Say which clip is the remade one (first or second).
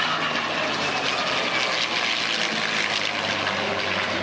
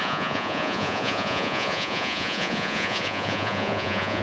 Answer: second